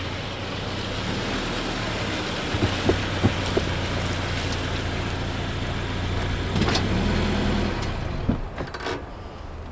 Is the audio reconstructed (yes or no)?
no